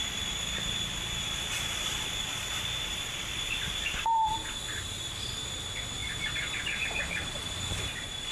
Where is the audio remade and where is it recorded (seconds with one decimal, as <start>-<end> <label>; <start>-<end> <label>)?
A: 0.0-8.3 remade